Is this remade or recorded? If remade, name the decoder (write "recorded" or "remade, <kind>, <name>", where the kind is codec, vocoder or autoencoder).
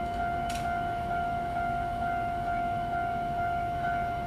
remade, autoencoder, DAC-VAE